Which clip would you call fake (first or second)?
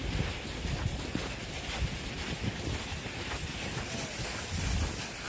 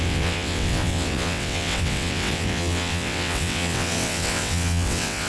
second